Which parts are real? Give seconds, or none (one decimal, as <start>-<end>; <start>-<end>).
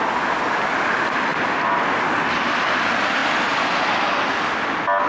0.0-5.1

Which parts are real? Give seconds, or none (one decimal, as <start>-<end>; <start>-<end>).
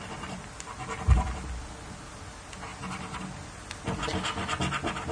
0.0-2.7; 3.9-5.1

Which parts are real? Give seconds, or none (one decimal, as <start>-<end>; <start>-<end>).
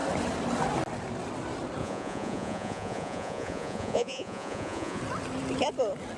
0.0-1.8; 5.0-6.2